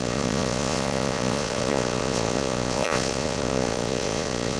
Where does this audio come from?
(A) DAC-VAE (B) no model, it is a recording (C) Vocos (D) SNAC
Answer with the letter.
C